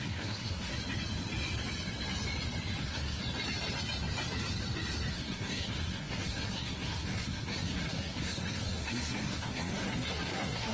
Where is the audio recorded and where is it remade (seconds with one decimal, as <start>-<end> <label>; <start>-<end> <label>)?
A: 0.0-0.7 remade; 0.7-2.8 recorded; 2.8-3.2 remade; 3.2-5.1 recorded; 5.1-10.7 remade